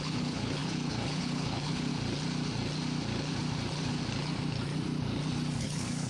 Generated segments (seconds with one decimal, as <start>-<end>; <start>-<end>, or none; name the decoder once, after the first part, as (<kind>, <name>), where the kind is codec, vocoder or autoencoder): 0.0-1.9 (codec, HILCodec); 5.6-6.1